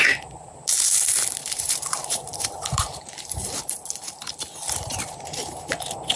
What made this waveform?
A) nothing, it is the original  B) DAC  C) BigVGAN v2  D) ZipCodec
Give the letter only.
C